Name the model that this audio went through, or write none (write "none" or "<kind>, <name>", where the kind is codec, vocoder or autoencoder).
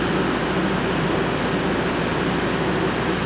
none